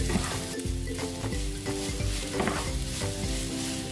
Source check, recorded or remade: recorded